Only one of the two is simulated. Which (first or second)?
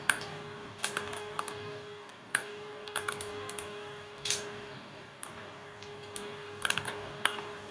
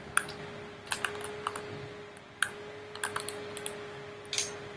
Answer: first